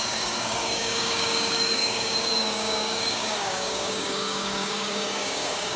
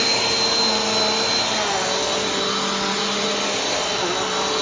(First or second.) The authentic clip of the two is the second